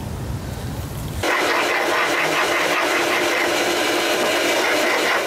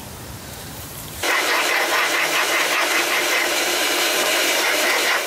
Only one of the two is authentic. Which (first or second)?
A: first